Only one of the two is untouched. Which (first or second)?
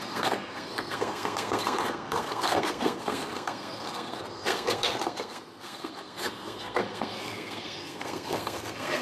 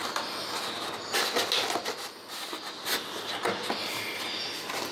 second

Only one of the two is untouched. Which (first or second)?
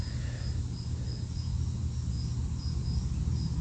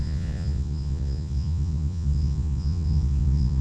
first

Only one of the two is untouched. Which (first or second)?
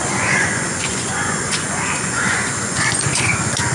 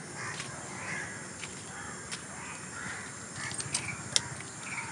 second